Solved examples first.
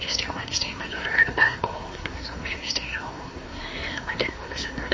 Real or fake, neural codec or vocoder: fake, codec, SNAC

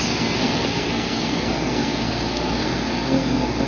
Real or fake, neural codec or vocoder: fake, codec, SNAC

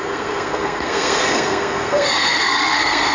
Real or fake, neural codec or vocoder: fake, codec, SNAC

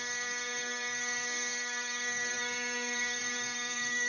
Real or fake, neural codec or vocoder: fake, codec, SNAC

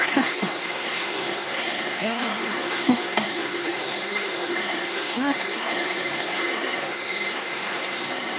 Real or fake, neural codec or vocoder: fake, codec, SNAC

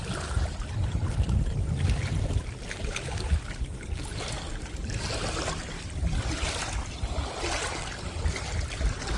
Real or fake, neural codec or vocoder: real